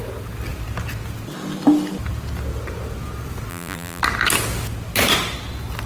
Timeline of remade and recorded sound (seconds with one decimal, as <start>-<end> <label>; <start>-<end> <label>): 0.0-3.5 recorded; 3.5-4.0 remade; 4.0-5.9 recorded